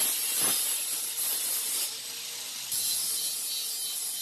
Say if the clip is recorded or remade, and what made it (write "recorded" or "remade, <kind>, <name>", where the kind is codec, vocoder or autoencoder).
recorded